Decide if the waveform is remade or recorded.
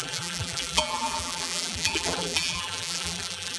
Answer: remade